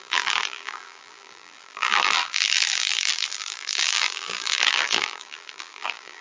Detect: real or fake fake